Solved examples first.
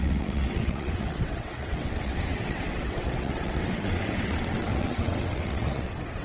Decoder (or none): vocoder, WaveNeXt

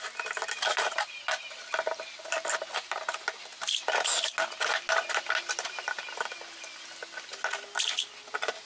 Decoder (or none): none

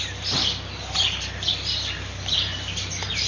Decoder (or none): vocoder, BigVGAN v2